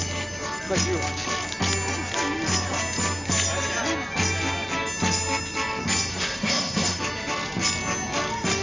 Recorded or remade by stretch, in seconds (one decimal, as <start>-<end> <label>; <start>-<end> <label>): 0.0-6.1 recorded; 6.1-7.0 remade; 7.0-8.6 recorded